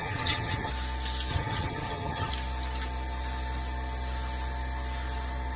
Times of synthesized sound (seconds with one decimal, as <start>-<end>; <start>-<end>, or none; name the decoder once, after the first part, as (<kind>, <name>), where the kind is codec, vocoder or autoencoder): 0.0-0.7 (vocoder, HiFi-GAN); 1.3-2.3